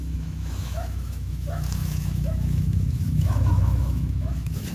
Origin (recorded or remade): remade